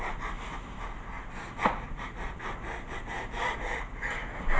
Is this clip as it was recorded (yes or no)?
yes